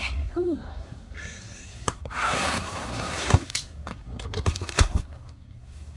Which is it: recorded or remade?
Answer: remade